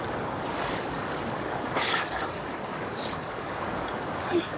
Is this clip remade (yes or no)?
yes